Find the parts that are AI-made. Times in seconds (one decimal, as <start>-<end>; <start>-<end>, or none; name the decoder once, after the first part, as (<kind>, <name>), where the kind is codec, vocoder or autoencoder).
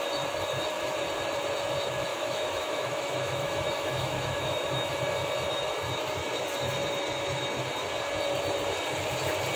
2.1-4.9 (autoencoder, DAC-VAE)